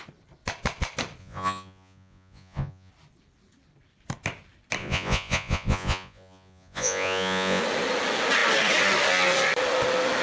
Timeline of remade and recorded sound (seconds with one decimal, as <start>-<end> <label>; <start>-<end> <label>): 0.0-1.2 recorded; 1.2-2.9 remade; 2.9-4.8 recorded; 4.8-7.6 remade; 7.6-10.2 recorded